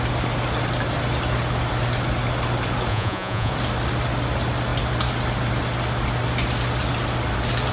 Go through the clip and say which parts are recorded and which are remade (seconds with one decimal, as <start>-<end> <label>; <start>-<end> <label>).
0.0-2.9 recorded; 2.9-3.5 remade; 3.5-7.7 recorded